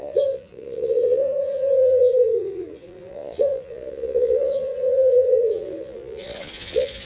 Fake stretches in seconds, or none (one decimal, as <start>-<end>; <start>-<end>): 0.0-7.1